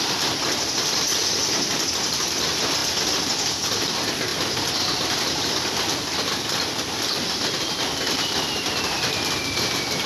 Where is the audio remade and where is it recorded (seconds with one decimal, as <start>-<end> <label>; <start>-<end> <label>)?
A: 0.0-10.1 recorded

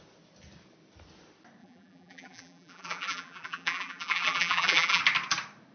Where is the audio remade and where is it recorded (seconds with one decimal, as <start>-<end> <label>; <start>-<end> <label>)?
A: 0.0-1.6 recorded; 1.6-5.0 remade; 5.0-5.7 recorded